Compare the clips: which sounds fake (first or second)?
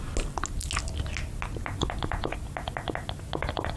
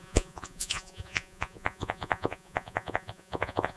second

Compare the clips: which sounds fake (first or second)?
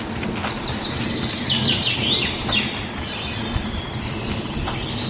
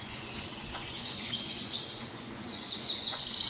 second